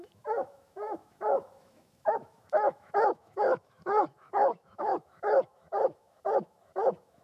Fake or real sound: fake